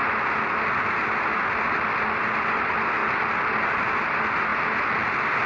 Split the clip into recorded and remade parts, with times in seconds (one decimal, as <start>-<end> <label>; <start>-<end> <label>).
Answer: 0.0-5.5 recorded